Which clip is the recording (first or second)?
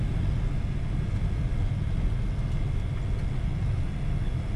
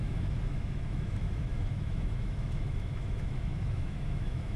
first